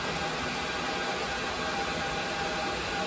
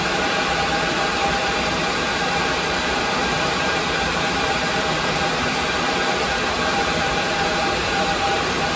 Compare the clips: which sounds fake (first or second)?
second